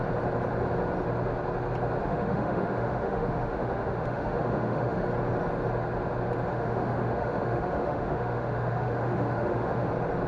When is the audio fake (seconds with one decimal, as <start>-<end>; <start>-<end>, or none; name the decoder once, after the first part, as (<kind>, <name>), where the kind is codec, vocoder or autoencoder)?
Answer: 2.0-5.0 (autoencoder, DAC-VAE); 6.5-9.9